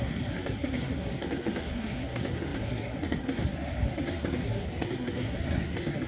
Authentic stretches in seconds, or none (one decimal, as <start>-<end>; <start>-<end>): none